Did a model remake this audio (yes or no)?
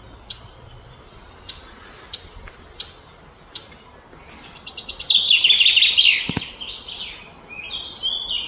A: no